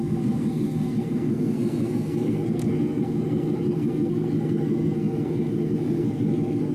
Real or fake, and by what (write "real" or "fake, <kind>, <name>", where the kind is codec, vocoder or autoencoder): fake, codec, SNAC